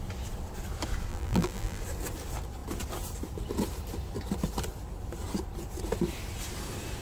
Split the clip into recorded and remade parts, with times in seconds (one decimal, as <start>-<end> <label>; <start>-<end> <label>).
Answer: 0.0-1.1 recorded; 1.1-1.8 remade; 1.8-7.0 recorded